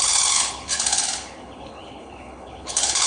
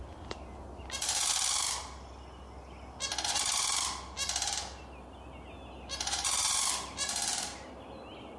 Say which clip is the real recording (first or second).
second